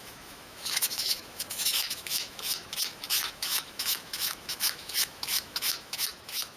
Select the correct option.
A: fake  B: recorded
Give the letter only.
A